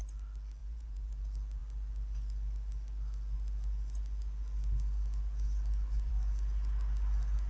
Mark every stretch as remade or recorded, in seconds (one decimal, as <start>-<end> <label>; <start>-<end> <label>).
0.0-0.6 recorded; 0.6-1.2 remade; 1.2-7.5 recorded